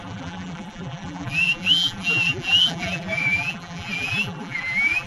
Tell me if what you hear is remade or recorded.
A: remade